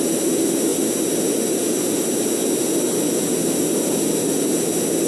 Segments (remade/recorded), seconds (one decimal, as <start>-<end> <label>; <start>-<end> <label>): 0.0-5.1 recorded